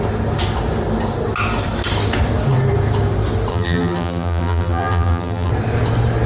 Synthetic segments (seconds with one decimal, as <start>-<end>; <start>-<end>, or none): 3.5-5.5